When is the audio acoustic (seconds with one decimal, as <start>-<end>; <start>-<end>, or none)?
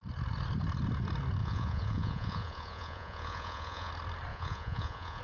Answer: 0.0-1.4; 3.9-4.3